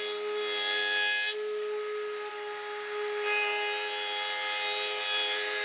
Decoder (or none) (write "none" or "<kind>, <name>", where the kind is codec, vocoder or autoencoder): none